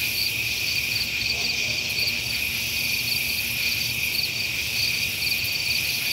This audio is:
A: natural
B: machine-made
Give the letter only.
A